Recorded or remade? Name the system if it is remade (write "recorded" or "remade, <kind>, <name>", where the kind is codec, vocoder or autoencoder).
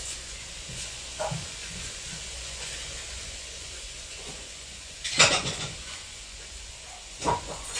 remade, vocoder, Vocos